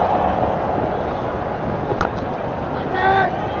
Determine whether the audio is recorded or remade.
recorded